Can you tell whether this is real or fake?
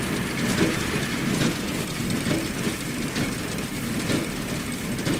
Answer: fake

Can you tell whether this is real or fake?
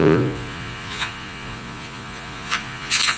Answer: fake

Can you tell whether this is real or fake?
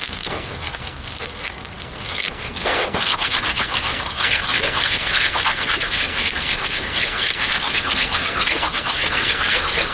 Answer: fake